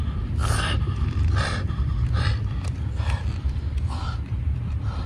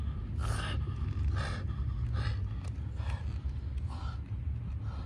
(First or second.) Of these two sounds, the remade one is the first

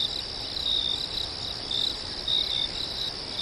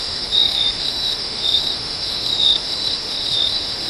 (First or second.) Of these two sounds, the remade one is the second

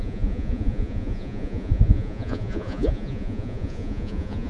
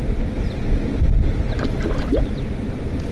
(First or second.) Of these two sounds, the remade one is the first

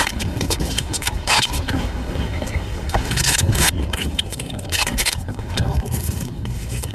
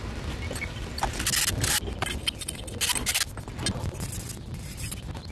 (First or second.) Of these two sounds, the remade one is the first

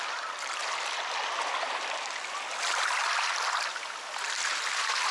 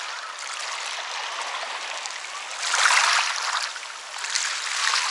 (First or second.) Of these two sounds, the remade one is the first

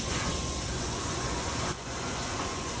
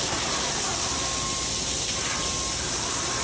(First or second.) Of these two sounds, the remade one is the first